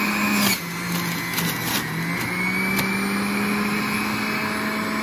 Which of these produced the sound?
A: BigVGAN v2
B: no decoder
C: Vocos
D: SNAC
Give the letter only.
B